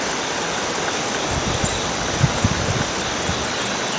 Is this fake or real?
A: real